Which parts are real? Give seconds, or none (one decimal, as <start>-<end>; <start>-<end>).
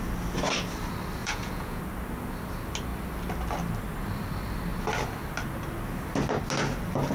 0.0-1.2; 1.8-7.1